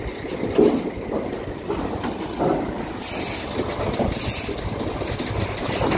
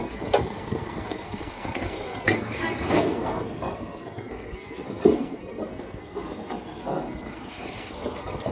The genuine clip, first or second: first